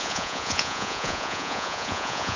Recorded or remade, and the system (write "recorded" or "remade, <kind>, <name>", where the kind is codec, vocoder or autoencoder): remade, vocoder, Vocos